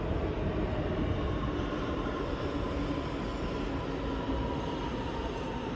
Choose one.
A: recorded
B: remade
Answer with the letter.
A